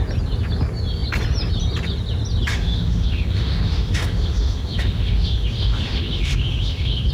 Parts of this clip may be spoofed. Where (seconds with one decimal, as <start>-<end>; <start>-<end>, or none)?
2.5-7.1